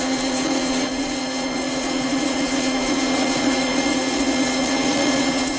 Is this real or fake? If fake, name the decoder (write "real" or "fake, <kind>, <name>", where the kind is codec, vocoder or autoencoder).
fake, vocoder, Vocos